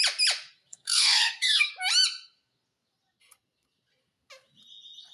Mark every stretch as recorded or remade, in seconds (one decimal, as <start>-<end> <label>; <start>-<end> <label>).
0.0-0.7 recorded; 0.7-1.7 remade; 1.7-5.1 recorded